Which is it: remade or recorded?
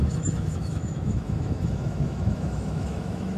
remade